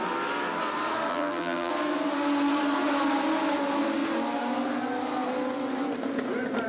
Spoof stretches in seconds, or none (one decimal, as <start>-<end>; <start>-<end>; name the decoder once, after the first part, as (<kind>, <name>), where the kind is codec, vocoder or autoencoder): 1.1-1.7 (vocoder, BigVGAN v2)